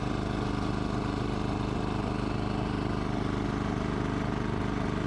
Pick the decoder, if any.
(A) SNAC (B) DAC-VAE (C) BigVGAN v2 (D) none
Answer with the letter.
D